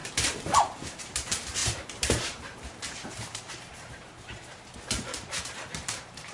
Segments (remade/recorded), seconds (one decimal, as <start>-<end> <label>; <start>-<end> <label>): 0.0-0.6 recorded; 0.6-6.3 remade